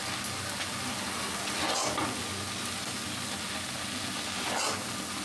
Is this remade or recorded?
recorded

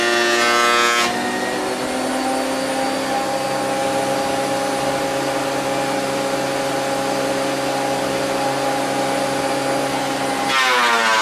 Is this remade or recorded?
recorded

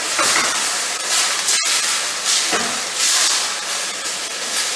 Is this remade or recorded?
remade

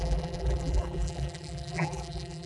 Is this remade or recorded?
remade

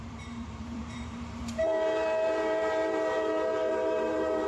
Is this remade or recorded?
remade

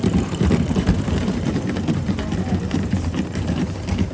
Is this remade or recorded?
remade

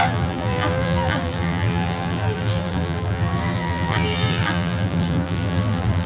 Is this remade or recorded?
remade